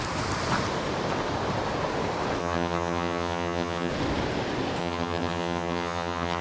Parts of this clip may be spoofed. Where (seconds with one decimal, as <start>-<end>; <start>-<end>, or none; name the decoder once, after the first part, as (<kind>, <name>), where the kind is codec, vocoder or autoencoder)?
2.4-3.9 (vocoder, HiFi-GAN); 4.8-6.4